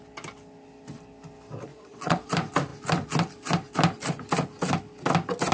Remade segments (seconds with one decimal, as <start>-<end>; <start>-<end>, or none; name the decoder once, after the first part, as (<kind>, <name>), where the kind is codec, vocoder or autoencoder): 1.7-2.3 (vocoder, Vocos)